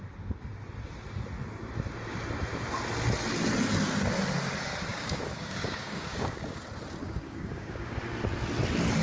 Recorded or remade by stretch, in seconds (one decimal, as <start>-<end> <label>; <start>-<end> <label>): 0.0-4.9 recorded; 4.9-6.6 remade; 6.6-7.0 recorded; 7.0-8.0 remade; 8.0-9.0 recorded